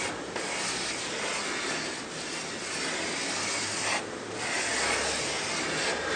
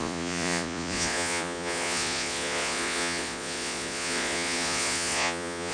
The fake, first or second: second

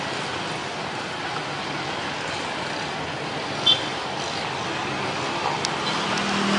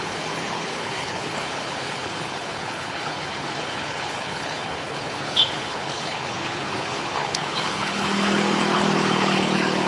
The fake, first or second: second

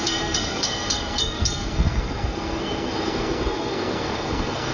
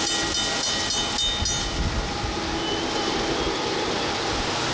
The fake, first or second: first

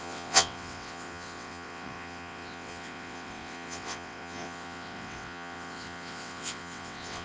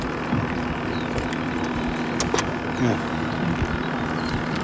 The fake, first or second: first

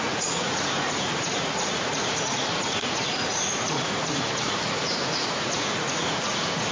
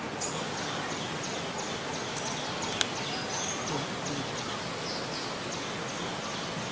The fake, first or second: first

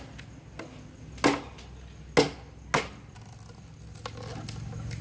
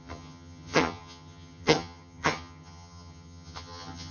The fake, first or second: second